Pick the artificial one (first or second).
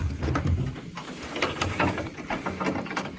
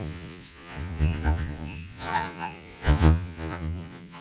second